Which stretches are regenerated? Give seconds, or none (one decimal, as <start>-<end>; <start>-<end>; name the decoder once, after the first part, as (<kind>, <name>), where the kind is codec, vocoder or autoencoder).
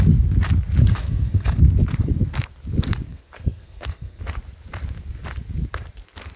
0.8-1.6 (codec, SNAC); 3.1-4.2